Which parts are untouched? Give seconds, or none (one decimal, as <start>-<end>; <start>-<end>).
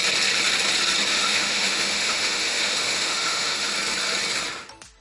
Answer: 0.0-1.1; 3.7-5.0